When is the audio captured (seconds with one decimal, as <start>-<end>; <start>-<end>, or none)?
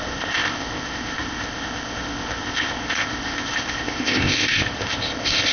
none